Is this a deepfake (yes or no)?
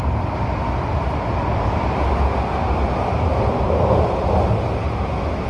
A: no